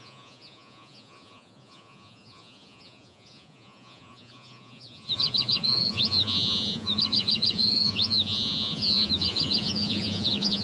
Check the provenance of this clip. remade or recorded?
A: remade